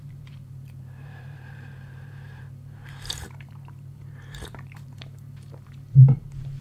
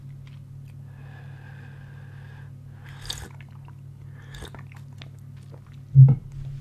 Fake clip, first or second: first